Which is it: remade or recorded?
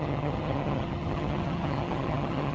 remade